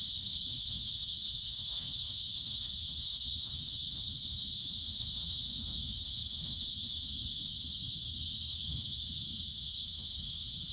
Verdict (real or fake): fake